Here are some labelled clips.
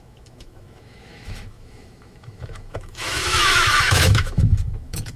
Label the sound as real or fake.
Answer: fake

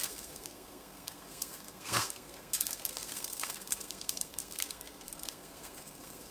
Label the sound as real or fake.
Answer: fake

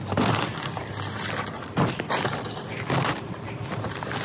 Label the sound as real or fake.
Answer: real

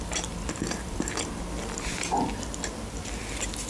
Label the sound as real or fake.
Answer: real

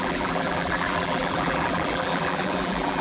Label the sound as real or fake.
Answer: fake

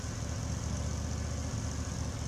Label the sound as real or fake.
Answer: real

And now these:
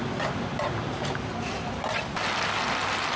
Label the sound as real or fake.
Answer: real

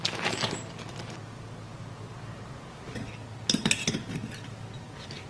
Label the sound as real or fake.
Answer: real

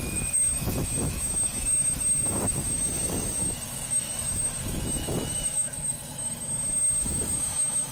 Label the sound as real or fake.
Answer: fake